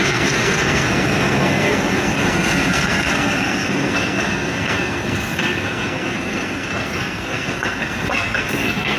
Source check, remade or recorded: remade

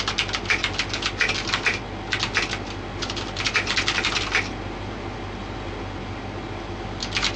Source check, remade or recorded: recorded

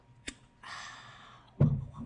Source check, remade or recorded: recorded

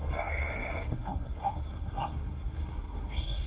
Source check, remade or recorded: remade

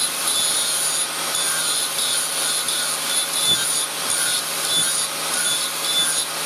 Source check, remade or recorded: recorded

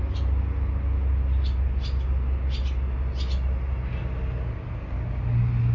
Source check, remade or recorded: recorded